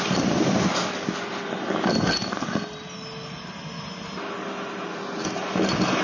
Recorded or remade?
recorded